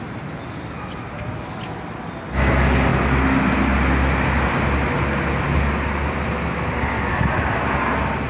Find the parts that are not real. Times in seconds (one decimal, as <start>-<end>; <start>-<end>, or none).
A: none